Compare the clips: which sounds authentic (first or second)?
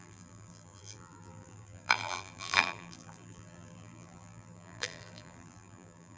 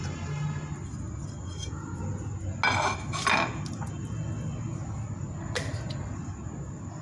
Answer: second